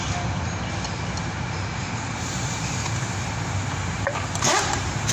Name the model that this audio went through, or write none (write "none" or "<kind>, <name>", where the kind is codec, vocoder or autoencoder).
none